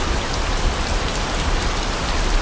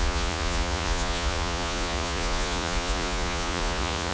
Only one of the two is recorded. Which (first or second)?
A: first